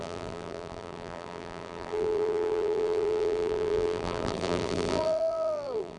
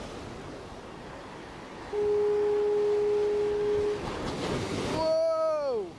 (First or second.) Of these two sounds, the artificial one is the first